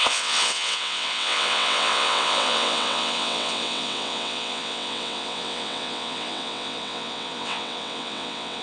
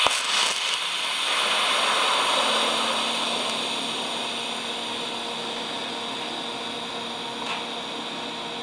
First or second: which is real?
second